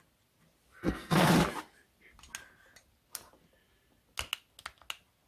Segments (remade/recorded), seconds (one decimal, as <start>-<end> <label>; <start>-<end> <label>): 0.0-0.8 recorded; 0.8-1.3 remade; 1.3-5.3 recorded